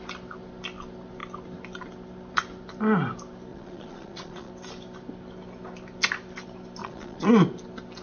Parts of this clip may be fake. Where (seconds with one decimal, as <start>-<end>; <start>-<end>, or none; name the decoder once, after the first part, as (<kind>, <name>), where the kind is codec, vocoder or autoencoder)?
3.5-4.5 (vocoder, Vocos); 6.8-7.3